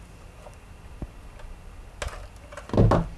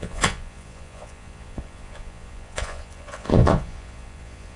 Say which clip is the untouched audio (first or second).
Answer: first